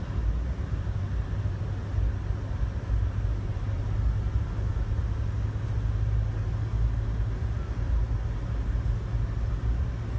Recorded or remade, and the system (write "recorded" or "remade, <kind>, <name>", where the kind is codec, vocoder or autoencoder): recorded